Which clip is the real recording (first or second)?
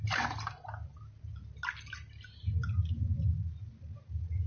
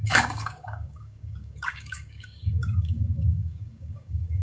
first